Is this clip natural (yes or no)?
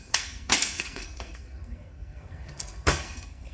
no